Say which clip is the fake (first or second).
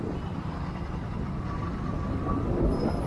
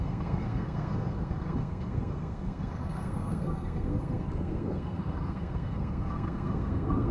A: second